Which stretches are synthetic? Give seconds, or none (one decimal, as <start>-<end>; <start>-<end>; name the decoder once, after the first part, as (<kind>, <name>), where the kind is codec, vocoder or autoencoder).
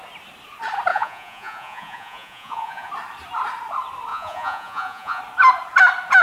0.9-2.9 (vocoder, Vocos); 4.1-5.2